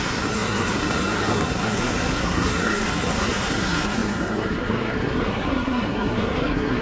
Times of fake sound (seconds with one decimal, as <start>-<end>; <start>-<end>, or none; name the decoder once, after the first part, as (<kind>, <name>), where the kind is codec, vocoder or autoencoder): 0.0-6.8 (codec, SNAC)